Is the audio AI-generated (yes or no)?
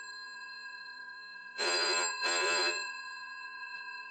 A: yes